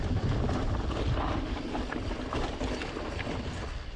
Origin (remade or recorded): recorded